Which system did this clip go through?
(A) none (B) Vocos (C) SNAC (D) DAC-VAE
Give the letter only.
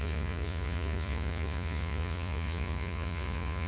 B